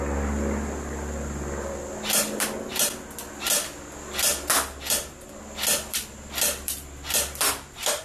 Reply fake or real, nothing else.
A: real